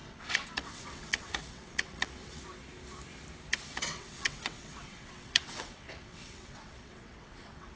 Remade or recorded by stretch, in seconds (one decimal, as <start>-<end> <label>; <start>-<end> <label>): 0.0-2.4 remade; 2.4-3.7 recorded; 3.7-7.8 remade

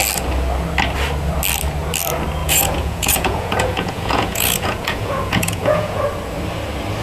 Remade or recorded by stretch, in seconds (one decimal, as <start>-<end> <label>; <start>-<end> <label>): 0.0-2.4 recorded; 2.4-6.0 remade; 6.0-7.0 recorded

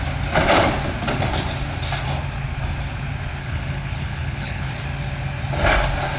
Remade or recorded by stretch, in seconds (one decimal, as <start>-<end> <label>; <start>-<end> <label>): 0.0-3.4 recorded; 3.4-4.7 remade; 4.7-6.2 recorded